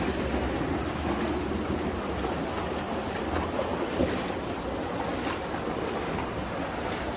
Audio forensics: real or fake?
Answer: real